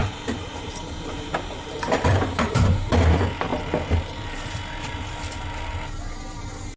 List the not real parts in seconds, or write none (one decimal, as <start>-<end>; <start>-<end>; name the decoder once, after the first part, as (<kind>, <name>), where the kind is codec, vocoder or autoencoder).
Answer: 0.0-2.9 (vocoder, BigVGAN v2)